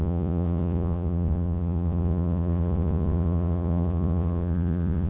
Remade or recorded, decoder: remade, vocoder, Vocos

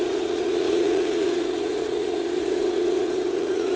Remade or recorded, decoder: remade, vocoder, Vocos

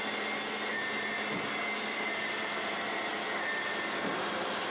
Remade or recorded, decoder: recorded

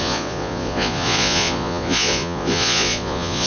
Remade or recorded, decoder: remade, vocoder, Vocos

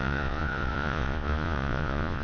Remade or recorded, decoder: remade, vocoder, Vocos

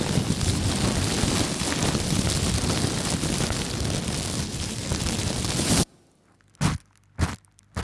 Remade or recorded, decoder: recorded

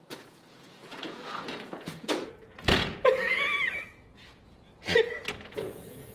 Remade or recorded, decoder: remade, vocoder, Vocos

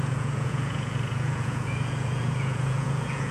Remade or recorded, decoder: remade, vocoder, Vocos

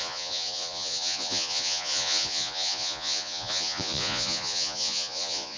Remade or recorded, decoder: remade, vocoder, Vocos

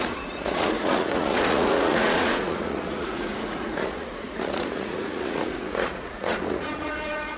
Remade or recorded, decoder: remade, vocoder, Vocos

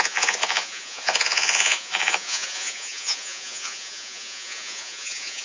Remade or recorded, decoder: remade, vocoder, Vocos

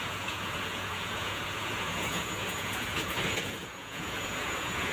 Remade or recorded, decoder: remade, vocoder, Vocos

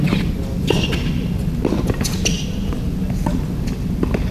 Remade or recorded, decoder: recorded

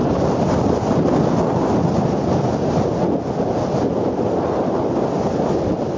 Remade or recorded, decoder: recorded